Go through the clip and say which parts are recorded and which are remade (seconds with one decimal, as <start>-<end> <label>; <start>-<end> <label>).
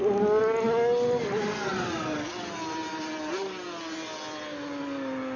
0.0-5.4 recorded